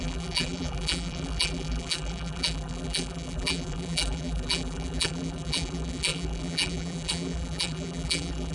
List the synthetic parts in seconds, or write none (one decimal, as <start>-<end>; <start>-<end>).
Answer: 0.0-8.5